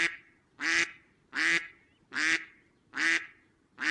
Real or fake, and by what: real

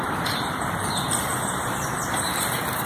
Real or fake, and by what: fake, vocoder, BigVGAN v2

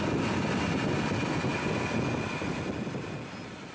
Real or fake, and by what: real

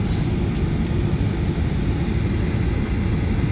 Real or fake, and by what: real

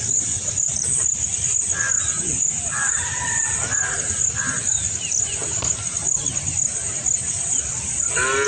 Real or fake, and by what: real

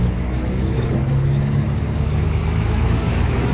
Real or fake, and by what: fake, codec, DAC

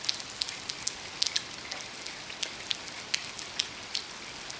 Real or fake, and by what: real